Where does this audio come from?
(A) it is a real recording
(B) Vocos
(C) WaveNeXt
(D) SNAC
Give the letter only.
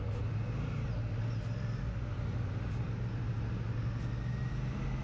A